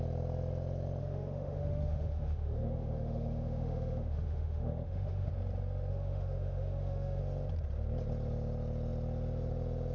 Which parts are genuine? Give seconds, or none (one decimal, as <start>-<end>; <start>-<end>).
0.0-1.0; 5.3-5.9; 7.2-9.9